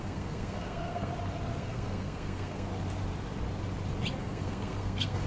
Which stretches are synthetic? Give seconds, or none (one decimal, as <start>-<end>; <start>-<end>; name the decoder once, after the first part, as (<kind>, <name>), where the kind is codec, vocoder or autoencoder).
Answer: 0.0-1.1 (codec, SNAC); 1.6-2.7; 4.2-5.3